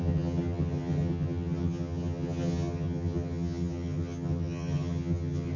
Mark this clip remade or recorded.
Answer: remade